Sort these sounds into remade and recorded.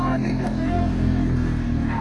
remade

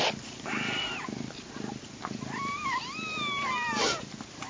recorded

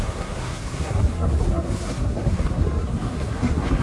remade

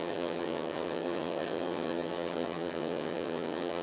remade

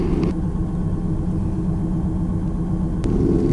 recorded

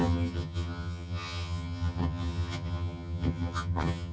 remade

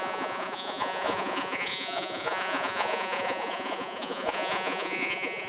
remade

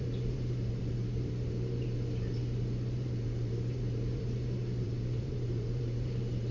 remade